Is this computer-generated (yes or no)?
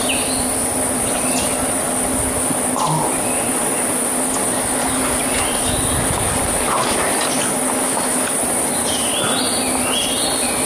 no